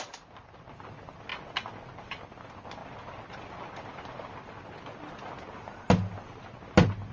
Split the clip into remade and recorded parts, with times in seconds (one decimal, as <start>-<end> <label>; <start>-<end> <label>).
0.0-7.1 recorded